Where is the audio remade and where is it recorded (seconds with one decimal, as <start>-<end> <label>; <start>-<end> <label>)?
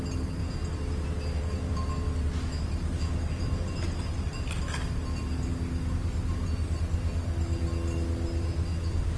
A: 0.0-9.2 recorded